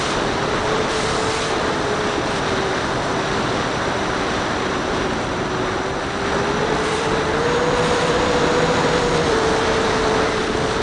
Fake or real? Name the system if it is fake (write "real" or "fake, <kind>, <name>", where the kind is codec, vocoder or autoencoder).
fake, vocoder, BigVGAN v2